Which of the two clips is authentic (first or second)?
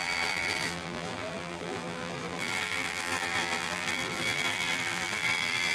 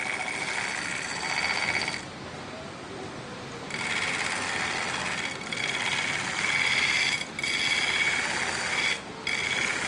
second